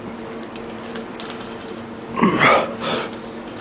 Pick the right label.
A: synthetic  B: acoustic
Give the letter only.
B